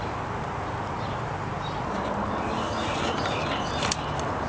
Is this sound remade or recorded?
recorded